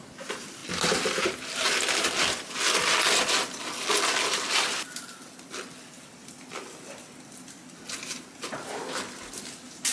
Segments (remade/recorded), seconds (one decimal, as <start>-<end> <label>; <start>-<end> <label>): 0.0-9.9 recorded